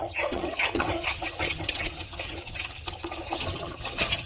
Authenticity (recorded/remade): remade